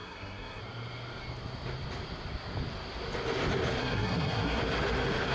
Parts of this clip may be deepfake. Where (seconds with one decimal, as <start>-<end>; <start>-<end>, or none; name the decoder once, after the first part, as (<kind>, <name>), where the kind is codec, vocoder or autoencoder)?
0.0-0.6 (codec, SNAC); 3.8-4.6